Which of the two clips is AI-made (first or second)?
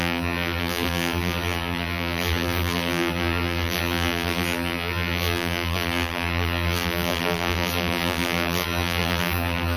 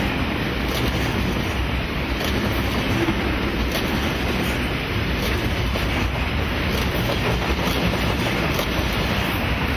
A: first